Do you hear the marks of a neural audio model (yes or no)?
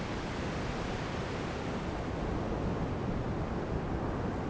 no